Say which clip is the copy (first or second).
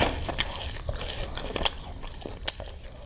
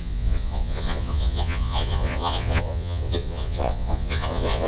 second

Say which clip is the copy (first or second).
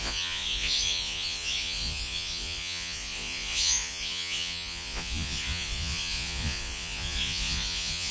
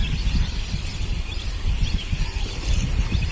first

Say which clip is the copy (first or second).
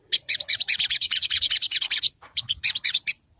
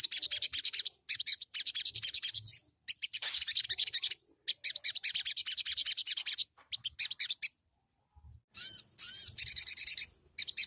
first